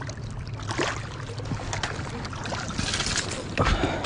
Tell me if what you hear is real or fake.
real